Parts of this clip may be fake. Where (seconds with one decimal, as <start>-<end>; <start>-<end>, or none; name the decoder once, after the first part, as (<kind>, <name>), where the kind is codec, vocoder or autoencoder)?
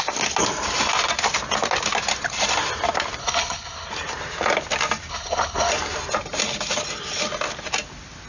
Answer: 3.2-3.9 (codec, HILCodec); 5.1-5.7